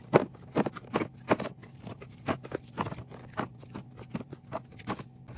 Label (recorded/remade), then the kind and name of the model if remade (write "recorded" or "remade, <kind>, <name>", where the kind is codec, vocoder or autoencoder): recorded